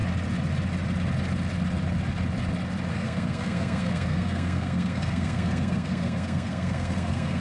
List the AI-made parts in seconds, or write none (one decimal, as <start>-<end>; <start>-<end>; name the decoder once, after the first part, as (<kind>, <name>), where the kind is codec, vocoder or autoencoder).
2.9-7.4 (codec, SNAC)